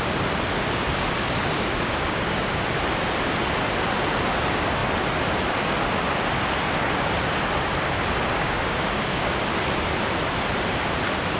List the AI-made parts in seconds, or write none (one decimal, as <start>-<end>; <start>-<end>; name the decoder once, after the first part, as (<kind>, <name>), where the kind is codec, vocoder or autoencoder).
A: 1.4-2.6 (codec, DAC); 8.3-9.2